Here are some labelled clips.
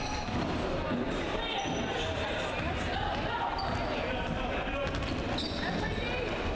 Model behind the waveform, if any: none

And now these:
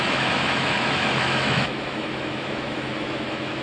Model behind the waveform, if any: autoencoder, DAC-VAE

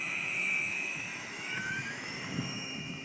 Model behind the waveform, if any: autoencoder, DAC-VAE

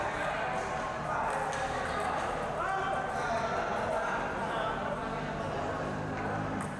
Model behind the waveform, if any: none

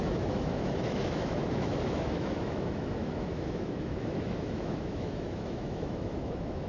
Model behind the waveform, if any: autoencoder, DAC-VAE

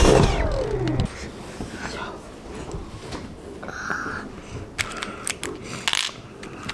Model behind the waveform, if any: none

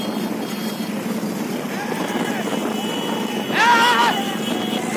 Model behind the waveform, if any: none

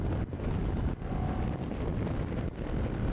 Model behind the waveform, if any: none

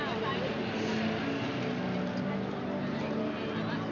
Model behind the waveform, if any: none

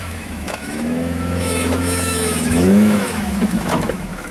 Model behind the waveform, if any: autoencoder, DAC-VAE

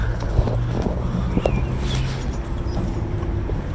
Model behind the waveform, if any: none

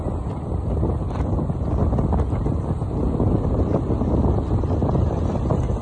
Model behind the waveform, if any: none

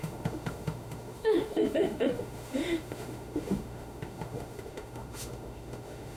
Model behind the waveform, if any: autoencoder, DAC-VAE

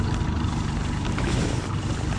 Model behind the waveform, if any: none